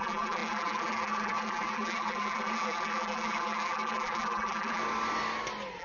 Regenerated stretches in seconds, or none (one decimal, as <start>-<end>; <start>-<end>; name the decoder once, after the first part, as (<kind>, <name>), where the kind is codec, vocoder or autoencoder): 0.0-4.8 (vocoder, BigVGAN v2)